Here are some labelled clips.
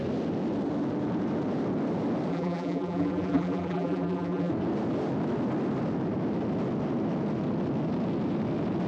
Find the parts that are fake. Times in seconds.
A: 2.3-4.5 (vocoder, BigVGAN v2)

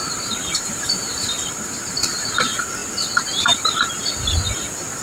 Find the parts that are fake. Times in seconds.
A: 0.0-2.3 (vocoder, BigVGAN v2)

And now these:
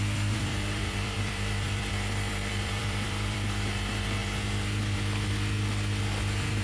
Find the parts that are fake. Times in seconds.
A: 0.0-4.2 (vocoder, BigVGAN v2); 6.0-6.6